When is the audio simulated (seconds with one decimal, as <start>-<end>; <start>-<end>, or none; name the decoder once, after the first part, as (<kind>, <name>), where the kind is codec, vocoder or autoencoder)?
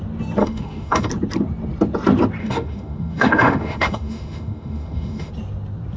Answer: 0.4-1.1 (autoencoder, DAC-VAE); 2.4-5.3